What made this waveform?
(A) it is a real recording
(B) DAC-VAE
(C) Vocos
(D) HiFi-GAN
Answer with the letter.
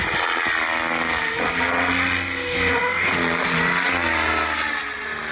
A